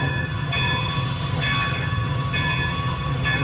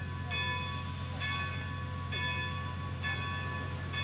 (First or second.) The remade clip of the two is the first